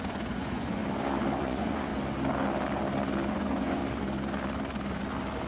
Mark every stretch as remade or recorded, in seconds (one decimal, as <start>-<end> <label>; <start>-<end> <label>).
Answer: 0.0-0.8 remade; 0.8-1.4 recorded; 1.4-1.9 remade; 1.9-3.3 recorded; 3.3-3.8 remade; 3.8-5.5 recorded